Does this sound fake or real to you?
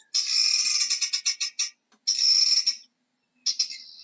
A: real